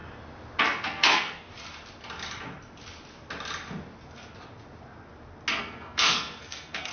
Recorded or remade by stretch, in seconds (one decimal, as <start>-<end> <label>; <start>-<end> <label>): 0.0-0.6 recorded; 0.6-1.5 remade; 1.5-5.6 recorded; 5.6-6.9 remade

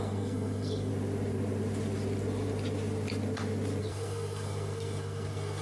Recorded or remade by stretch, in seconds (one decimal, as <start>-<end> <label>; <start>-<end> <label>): 0.0-0.9 remade; 0.9-3.8 recorded; 3.8-5.6 remade

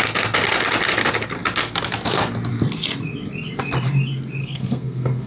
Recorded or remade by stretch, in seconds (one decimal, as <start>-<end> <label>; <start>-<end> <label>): 0.0-4.4 recorded; 4.4-5.3 remade

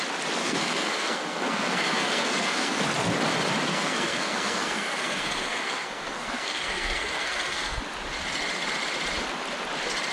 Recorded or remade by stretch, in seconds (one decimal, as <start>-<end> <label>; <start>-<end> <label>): 0.0-0.4 recorded; 0.4-2.8 remade; 2.8-3.7 recorded; 3.7-7.8 remade; 7.8-10.1 recorded